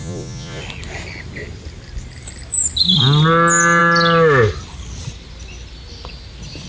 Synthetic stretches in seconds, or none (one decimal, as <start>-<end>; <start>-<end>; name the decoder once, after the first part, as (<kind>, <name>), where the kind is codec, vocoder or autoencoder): 0.0-0.6 (vocoder, Vocos)

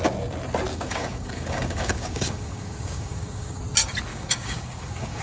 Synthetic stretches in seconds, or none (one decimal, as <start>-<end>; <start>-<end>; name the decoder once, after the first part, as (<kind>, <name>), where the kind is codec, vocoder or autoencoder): 0.7-3.6 (codec, DAC); 4.1-5.2

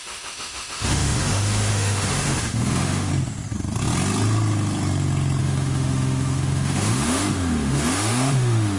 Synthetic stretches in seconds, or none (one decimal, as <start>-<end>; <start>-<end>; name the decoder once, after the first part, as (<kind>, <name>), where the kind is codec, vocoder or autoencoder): 0.0-3.1 (autoencoder, DAC-VAE); 5.4-8.8

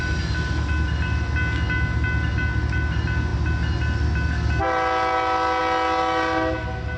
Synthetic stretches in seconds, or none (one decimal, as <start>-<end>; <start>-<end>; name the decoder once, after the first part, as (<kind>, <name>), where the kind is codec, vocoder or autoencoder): none

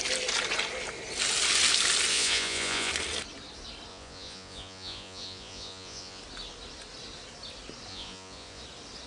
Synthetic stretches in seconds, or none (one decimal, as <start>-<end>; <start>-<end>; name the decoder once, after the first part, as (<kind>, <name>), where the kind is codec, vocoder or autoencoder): 2.1-2.9 (vocoder, Vocos); 3.9-6.2; 7.9-8.6